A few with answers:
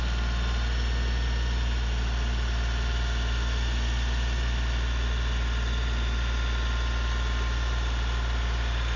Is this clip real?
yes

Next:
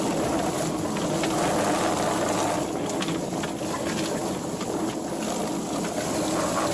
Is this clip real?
yes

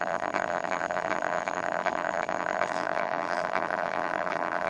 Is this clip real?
no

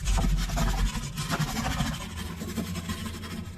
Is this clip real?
yes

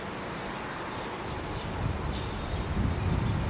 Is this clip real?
yes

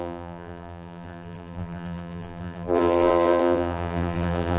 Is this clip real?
no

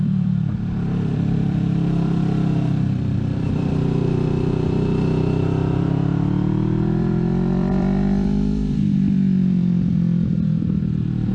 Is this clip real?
no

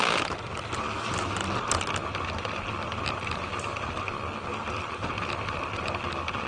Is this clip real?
yes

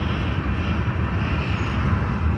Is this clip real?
yes